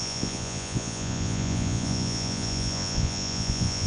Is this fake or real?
fake